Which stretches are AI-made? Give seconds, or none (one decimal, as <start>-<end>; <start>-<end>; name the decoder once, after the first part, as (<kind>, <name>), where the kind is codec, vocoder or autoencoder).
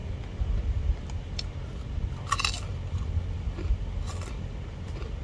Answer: none